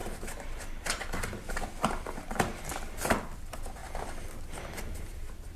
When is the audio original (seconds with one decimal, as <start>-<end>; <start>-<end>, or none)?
0.0-5.6